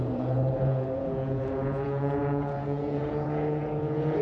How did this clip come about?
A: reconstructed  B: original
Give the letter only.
A